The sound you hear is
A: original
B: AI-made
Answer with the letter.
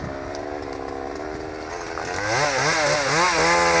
A